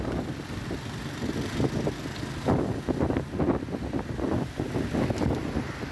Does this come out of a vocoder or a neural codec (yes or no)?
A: no